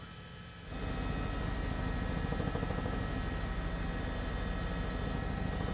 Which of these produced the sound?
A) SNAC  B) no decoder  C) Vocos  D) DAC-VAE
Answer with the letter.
B